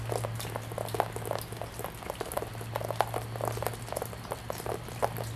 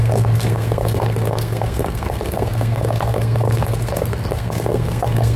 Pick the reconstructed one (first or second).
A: second